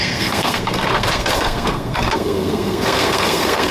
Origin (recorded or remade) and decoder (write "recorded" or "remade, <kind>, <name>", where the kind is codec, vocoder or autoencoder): remade, codec, SNAC